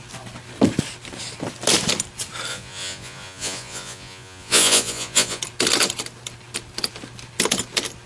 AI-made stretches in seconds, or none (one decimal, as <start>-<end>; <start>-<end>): 2.5-5.4